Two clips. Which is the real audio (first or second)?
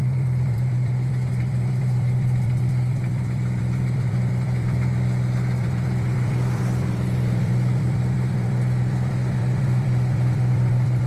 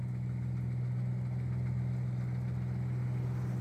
second